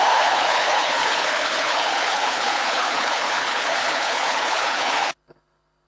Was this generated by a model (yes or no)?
yes